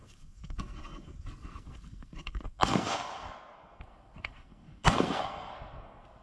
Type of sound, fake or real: fake